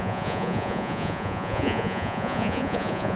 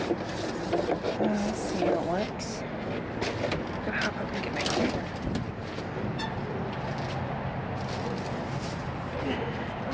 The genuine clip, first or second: second